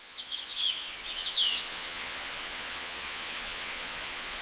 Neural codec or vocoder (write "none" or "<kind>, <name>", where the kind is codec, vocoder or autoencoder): vocoder, Vocos